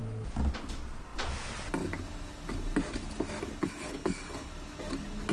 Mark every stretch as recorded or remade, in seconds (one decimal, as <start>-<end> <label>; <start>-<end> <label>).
0.0-3.6 recorded; 3.6-4.5 remade; 4.5-5.3 recorded